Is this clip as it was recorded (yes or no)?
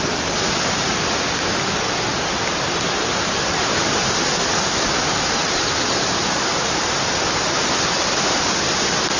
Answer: yes